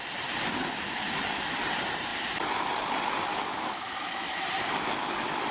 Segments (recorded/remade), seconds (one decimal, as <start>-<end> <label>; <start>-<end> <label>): 0.0-3.3 recorded; 3.3-4.4 remade; 4.4-5.5 recorded